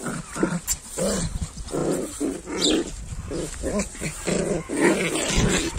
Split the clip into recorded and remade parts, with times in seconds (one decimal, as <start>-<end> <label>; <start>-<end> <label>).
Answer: 0.0-5.8 recorded